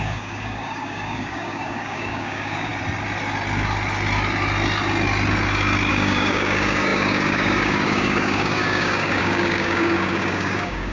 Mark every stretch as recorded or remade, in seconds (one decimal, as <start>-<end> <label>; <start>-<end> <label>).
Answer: 0.0-2.7 remade; 2.7-5.9 recorded; 5.9-10.9 remade